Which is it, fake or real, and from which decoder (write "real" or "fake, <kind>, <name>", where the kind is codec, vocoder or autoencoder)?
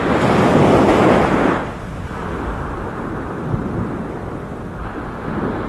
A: real